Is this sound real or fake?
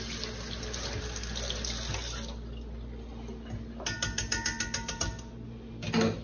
real